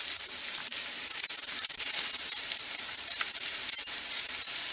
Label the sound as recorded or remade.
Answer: remade